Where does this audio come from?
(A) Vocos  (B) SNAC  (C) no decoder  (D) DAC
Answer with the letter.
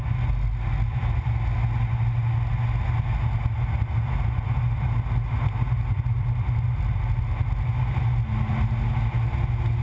C